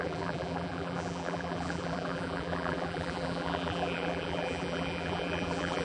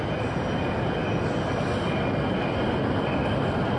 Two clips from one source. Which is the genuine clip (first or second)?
second